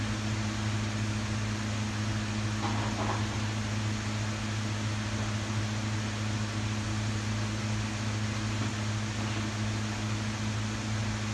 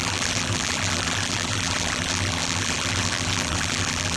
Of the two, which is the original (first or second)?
first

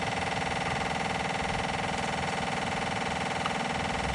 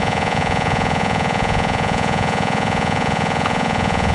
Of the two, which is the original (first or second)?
first